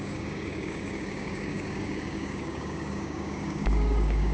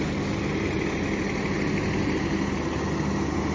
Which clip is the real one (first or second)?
second